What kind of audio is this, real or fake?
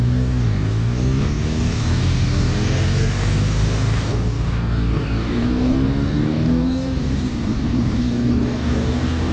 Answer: fake